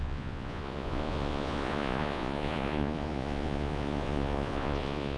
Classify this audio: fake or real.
fake